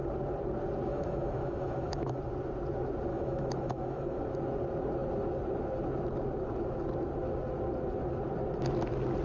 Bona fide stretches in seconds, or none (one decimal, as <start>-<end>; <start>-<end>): 0.0-0.9; 2.2-3.1; 4.2-9.2